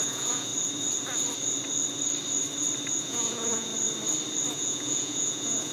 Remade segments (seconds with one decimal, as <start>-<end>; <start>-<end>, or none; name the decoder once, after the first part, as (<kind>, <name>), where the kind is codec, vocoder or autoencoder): 0.0-0.5 (vocoder, Vocos); 3.0-3.7; 4.5-5.7